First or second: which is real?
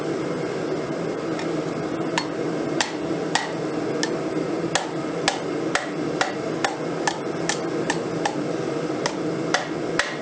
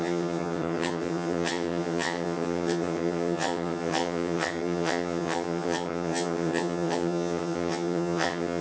first